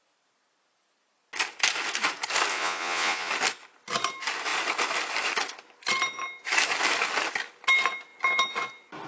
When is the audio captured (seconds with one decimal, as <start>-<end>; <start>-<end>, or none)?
0.0-2.5; 3.3-9.1